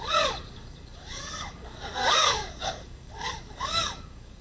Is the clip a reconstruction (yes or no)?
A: yes